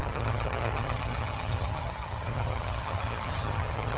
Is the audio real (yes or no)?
no